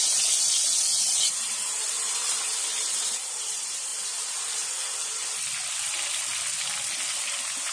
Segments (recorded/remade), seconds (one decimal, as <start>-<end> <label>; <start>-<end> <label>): 0.0-0.8 recorded; 0.8-2.2 remade; 2.2-2.9 recorded; 2.9-3.9 remade; 3.9-7.1 recorded; 7.1-7.7 remade